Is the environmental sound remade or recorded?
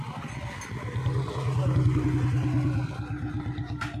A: recorded